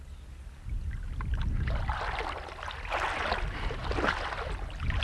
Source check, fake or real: real